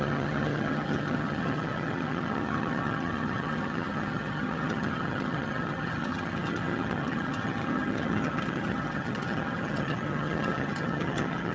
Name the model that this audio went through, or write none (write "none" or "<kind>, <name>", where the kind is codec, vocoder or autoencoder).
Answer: vocoder, HiFi-GAN